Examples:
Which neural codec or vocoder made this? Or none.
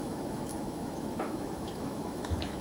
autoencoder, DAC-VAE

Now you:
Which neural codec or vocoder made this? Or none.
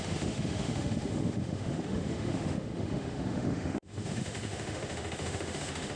autoencoder, DAC-VAE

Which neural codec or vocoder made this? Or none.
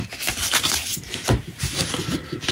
none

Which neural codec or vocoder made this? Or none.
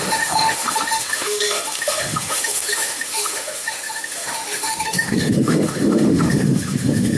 autoencoder, DAC-VAE